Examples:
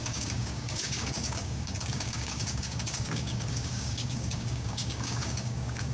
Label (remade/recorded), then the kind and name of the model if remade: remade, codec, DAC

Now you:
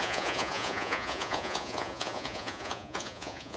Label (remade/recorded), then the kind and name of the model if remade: remade, vocoder, Vocos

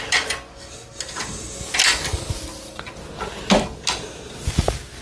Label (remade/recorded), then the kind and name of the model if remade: recorded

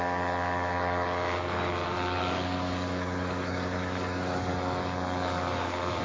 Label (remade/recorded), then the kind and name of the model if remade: remade, codec, DAC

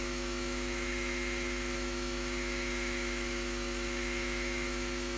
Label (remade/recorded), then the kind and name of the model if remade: remade, autoencoder, DAC-VAE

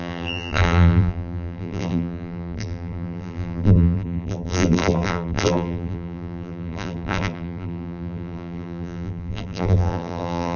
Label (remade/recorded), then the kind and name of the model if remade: remade, vocoder, BigVGAN v2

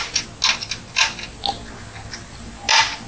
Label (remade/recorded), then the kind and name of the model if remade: recorded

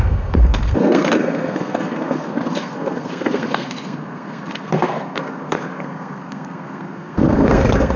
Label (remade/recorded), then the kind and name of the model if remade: remade, codec, SNAC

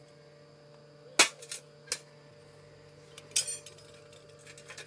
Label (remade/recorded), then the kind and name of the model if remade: recorded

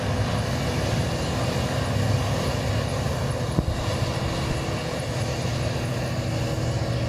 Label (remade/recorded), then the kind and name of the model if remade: recorded